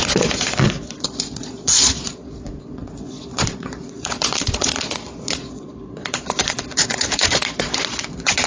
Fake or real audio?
fake